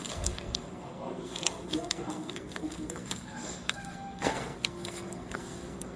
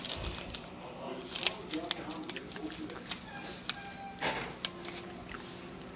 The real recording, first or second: second